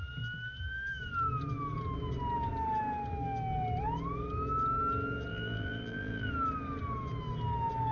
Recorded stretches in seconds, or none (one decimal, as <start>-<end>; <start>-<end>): 0.0-5.3; 6.3-7.9